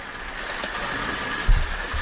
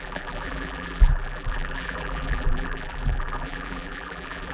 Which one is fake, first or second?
second